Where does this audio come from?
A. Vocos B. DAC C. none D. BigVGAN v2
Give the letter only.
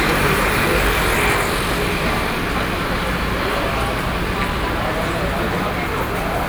C